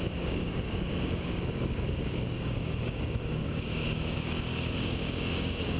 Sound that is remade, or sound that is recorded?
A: remade